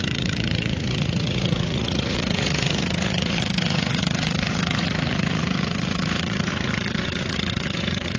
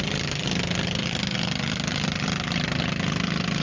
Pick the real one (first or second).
second